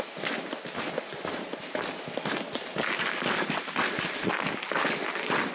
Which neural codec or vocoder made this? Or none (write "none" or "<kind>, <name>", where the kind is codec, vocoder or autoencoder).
none